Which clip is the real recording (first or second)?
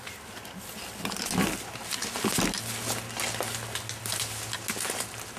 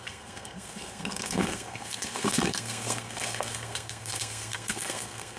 first